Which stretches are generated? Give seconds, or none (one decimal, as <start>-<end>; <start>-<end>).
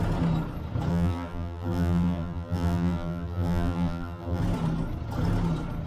0.9-4.4